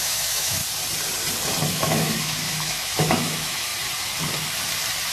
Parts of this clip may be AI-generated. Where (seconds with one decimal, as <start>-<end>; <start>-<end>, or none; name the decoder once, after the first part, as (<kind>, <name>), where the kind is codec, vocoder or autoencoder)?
0.0-0.6 (autoencoder, DAC-VAE); 1.7-3.7